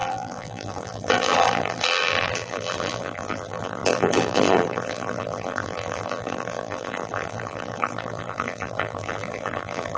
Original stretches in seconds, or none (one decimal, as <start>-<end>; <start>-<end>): none